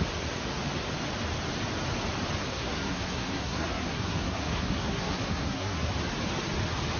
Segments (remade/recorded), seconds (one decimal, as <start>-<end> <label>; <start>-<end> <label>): 0.0-2.5 recorded; 2.5-5.9 remade; 5.9-7.0 recorded

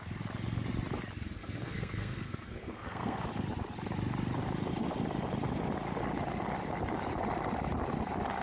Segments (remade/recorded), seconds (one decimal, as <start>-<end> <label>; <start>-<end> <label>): 0.0-1.4 recorded; 1.4-3.2 remade; 3.2-8.4 recorded